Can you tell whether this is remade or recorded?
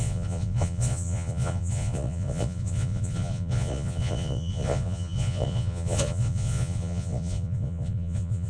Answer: remade